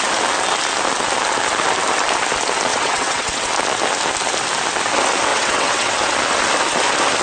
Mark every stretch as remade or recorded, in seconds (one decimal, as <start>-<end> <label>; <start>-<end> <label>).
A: 0.0-2.7 recorded; 2.7-3.5 remade; 3.5-5.3 recorded; 5.3-5.9 remade; 5.9-7.2 recorded